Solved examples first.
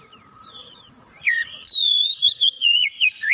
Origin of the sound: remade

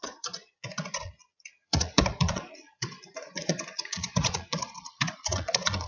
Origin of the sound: remade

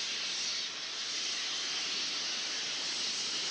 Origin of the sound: recorded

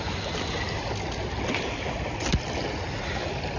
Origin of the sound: recorded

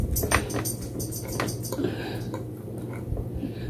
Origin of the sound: recorded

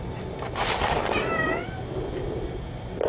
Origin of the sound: recorded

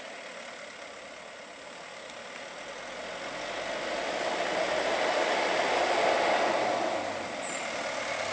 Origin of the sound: recorded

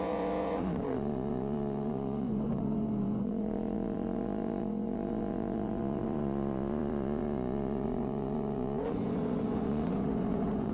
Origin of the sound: remade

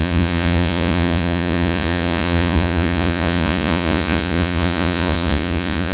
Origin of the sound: remade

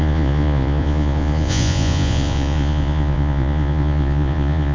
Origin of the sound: remade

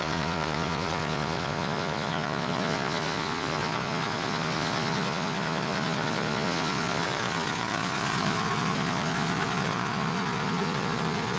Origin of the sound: remade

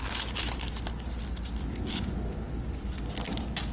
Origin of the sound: recorded